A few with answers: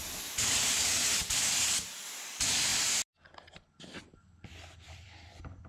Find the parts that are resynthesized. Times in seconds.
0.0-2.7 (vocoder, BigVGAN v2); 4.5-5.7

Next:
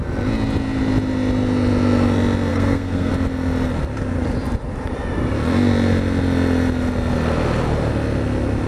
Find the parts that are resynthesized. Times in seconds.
2.5-3.1 (codec, SNAC)

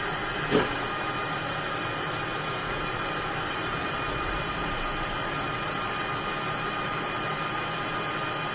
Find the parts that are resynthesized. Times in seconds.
2.6-5.8 (vocoder, BigVGAN v2)

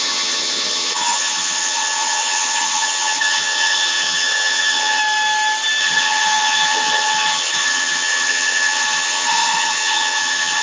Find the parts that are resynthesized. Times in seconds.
0.0-5.0 (vocoder, HiFi-GAN); 5.8-10.6

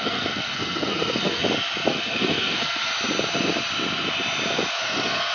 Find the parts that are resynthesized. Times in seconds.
0.0-1.4 (codec, SNAC); 1.9-2.9; 4.7-5.3